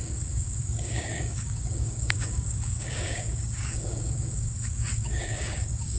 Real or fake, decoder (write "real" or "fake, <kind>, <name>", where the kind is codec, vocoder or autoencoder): fake, codec, DAC